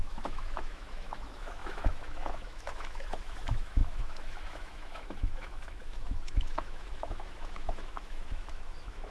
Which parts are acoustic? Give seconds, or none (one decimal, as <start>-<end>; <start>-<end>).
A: none